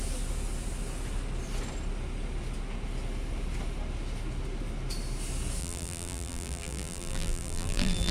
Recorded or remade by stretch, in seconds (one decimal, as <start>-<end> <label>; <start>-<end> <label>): 0.0-5.6 recorded; 5.6-8.1 remade